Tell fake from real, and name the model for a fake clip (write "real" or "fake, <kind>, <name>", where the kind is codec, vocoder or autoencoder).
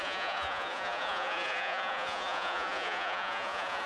fake, vocoder, Vocos